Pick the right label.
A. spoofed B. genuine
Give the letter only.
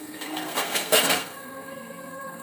A